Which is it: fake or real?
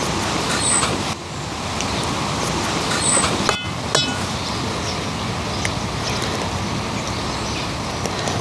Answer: real